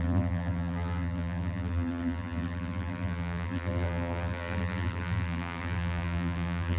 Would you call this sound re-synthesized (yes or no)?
yes